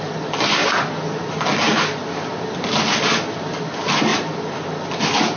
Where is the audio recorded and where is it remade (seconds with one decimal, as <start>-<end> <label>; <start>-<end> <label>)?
0.0-5.4 recorded